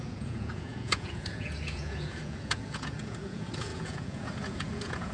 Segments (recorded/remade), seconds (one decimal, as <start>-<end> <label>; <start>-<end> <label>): 0.0-5.1 remade